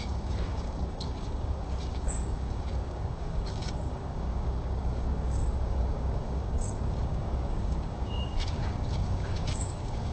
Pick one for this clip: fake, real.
fake